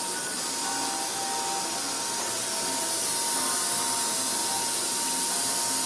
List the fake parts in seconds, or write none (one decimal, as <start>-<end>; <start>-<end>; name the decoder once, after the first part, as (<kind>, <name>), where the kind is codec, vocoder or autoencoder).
none